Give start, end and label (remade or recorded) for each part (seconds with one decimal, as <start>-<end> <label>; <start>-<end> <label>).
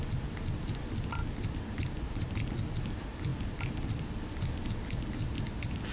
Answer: 0.0-5.9 recorded